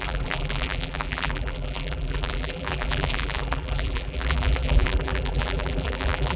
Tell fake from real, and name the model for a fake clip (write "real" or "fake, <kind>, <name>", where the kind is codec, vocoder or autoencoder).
fake, vocoder, BigVGAN v2